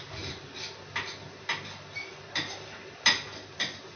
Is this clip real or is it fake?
real